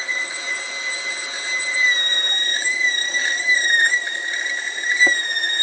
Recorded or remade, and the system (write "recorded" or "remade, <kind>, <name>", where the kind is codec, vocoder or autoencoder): remade, vocoder, BigVGAN v2